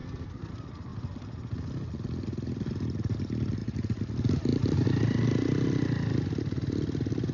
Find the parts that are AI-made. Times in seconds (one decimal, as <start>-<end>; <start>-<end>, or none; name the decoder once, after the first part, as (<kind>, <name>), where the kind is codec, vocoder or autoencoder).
0.0-0.5 (codec, SNAC)